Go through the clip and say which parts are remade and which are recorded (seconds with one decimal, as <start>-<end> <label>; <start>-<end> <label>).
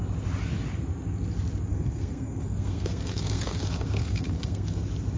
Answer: 0.0-1.7 recorded; 1.7-4.8 remade; 4.8-5.2 recorded